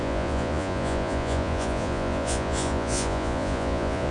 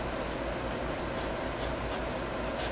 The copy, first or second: first